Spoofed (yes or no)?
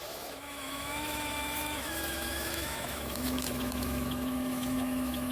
yes